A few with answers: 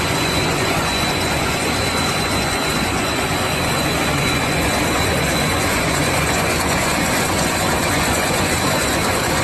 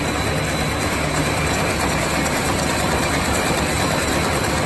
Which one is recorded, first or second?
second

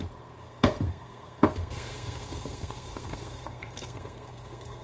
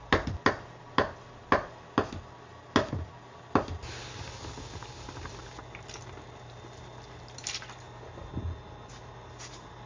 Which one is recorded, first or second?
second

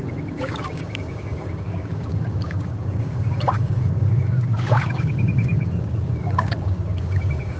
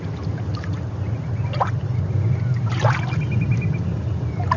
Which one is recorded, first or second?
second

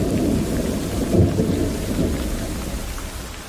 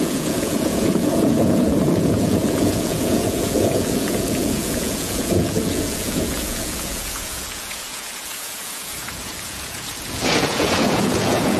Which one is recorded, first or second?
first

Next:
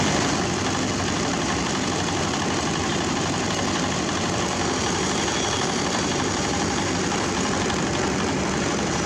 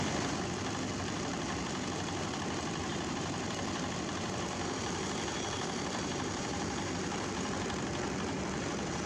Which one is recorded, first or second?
first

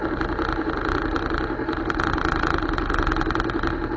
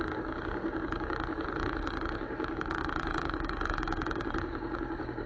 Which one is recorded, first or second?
first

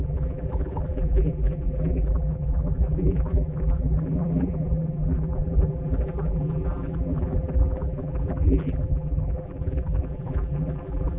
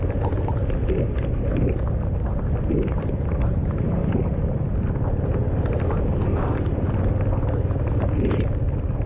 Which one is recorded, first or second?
second